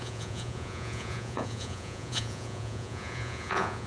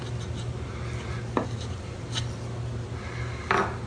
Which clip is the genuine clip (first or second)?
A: second